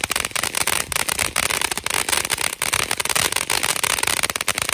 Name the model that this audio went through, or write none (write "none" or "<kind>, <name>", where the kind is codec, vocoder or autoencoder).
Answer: none